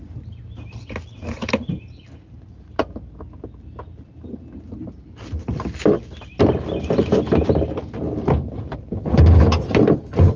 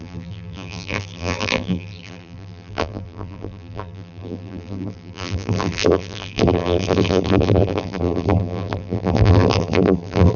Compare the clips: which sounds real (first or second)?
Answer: first